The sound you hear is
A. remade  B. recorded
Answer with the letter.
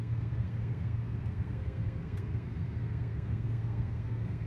A